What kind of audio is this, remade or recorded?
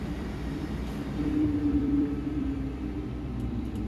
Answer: remade